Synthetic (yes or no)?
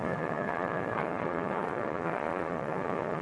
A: yes